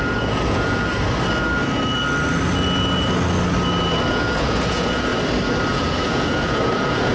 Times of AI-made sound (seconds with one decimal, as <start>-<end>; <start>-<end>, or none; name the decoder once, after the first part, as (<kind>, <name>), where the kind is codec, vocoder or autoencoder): 0.0-0.9 (vocoder, Vocos); 4.1-5.1; 5.7-7.1